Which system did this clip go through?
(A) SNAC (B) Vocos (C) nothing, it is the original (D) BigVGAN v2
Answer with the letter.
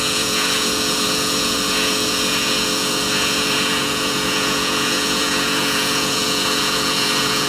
B